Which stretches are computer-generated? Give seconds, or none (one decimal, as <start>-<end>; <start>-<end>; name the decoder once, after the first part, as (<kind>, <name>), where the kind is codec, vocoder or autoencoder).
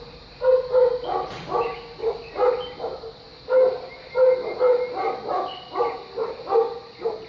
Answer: none